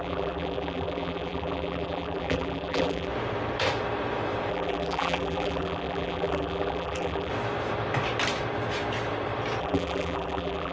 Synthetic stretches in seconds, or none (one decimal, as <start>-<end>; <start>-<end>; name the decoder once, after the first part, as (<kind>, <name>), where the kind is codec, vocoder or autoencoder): 0.0-3.1 (vocoder, BigVGAN v2); 4.5-7.3; 9.6-10.7